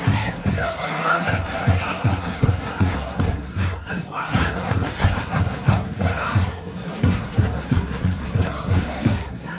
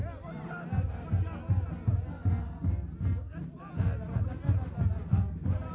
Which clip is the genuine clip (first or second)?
second